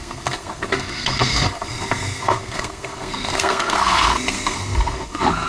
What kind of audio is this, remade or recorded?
remade